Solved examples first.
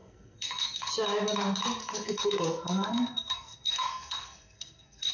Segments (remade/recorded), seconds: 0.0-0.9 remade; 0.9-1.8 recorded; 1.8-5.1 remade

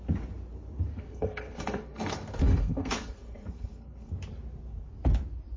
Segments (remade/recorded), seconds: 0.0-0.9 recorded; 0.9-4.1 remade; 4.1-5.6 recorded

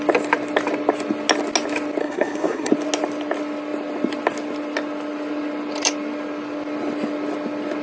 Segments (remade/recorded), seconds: 0.0-2.0 recorded; 2.0-2.7 remade; 2.7-7.8 recorded